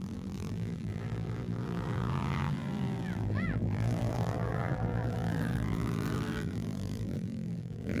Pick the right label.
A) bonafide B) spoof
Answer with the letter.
B